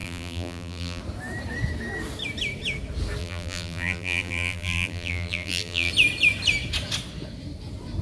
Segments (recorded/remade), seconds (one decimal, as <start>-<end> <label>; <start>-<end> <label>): 0.0-1.0 remade; 1.0-3.2 recorded; 3.2-5.9 remade; 5.9-8.0 recorded